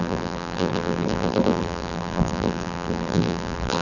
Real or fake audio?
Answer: fake